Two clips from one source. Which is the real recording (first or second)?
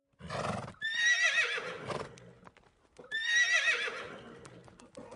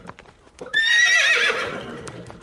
first